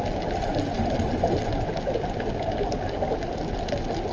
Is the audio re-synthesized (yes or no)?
no